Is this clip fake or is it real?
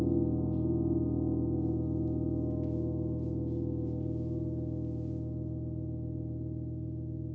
real